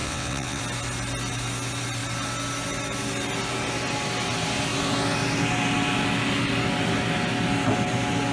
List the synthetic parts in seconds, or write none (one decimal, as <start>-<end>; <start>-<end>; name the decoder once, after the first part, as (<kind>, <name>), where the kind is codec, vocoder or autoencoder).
0.0-0.6 (vocoder, WaveNeXt)